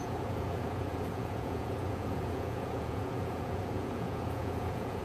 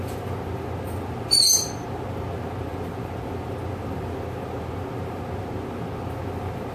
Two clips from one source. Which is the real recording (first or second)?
second